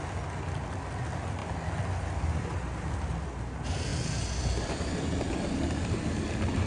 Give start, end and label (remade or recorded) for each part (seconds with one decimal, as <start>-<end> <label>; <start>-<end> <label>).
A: 0.0-6.7 recorded